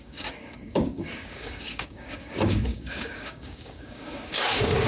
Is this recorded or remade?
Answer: remade